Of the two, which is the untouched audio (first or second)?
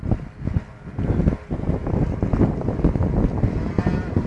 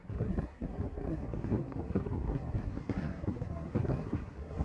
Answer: first